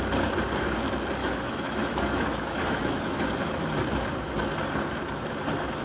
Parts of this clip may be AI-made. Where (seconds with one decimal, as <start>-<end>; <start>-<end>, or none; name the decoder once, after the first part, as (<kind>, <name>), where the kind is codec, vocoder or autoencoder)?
1.2-3.2 (autoencoder, DAC-VAE)